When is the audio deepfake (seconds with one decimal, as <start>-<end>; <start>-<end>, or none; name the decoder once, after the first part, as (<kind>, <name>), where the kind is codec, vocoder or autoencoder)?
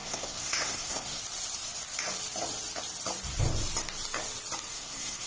0.0-1.2 (codec, SNAC); 4.7-5.3